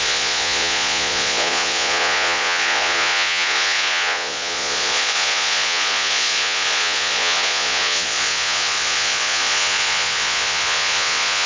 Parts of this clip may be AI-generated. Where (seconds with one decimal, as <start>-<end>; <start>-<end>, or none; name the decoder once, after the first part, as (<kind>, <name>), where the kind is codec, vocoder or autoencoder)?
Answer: 0.0-11.5 (vocoder, Vocos)